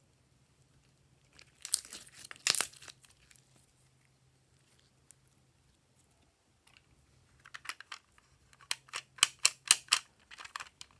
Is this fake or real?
real